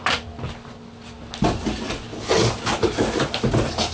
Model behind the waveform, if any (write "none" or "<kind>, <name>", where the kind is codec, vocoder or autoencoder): none